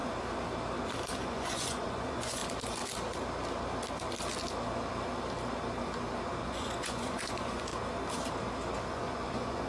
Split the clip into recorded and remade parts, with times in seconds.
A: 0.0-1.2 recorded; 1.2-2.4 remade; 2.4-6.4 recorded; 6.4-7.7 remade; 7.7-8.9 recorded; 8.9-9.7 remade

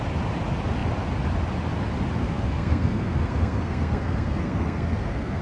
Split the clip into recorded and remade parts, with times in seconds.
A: 0.0-2.2 recorded; 2.2-5.4 remade